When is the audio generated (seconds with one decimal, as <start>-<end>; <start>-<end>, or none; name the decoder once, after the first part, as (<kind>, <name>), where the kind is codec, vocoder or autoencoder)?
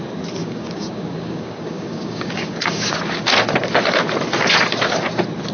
0.4-2.9 (codec, DAC)